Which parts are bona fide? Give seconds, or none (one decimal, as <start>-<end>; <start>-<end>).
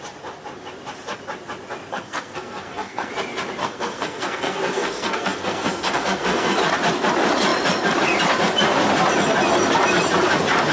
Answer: 0.0-1.9; 3.1-3.6; 6.6-10.7